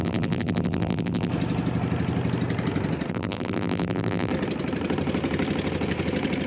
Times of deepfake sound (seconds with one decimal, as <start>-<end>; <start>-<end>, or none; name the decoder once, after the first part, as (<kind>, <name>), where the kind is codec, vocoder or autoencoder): 0.0-1.3 (vocoder, BigVGAN v2); 3.1-4.3